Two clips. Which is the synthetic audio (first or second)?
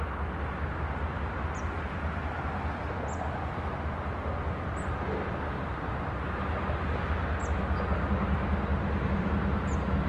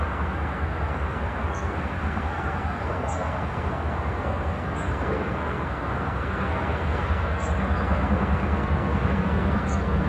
second